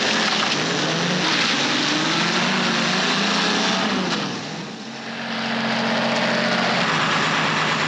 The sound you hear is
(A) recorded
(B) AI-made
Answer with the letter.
A